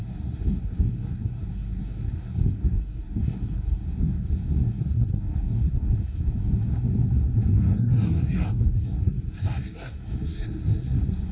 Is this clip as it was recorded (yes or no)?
no